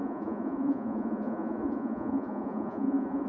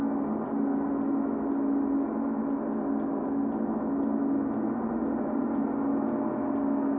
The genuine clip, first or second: second